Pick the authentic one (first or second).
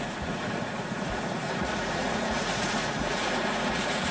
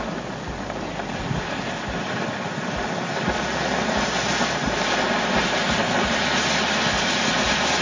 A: second